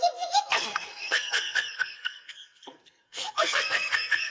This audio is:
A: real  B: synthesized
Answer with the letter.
B